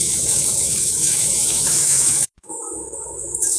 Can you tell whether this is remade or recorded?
remade